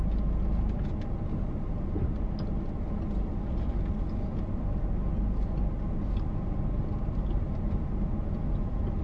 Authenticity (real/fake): real